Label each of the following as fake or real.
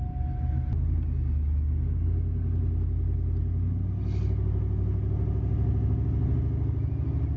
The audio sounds real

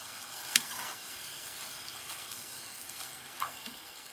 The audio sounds fake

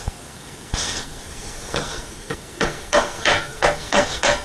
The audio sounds fake